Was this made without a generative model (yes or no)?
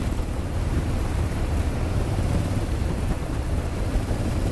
no